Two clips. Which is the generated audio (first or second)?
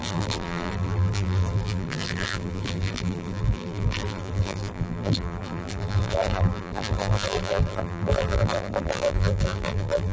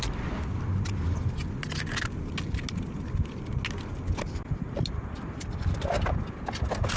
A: first